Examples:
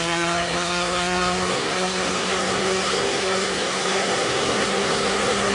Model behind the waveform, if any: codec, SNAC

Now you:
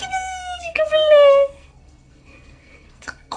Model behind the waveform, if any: codec, SNAC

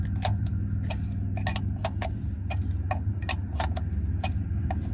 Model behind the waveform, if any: none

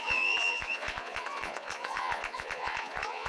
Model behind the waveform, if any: vocoder, Vocos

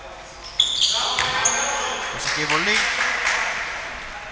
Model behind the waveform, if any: none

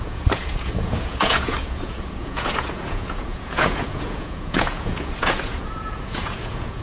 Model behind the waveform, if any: vocoder, Vocos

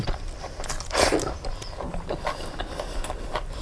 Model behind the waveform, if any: vocoder, BigVGAN v2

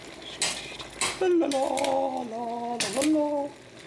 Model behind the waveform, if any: none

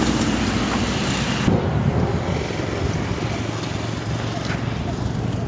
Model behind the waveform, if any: none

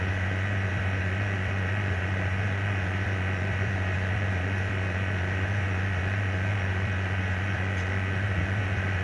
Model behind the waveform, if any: vocoder, Vocos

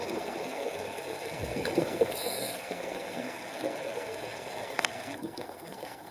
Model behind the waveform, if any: codec, SNAC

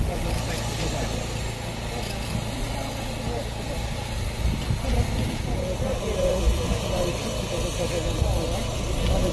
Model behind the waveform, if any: none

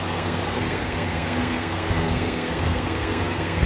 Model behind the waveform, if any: codec, SNAC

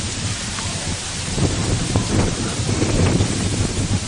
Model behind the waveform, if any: vocoder, BigVGAN v2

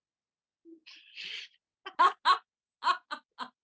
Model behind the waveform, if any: none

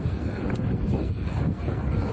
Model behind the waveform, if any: codec, SNAC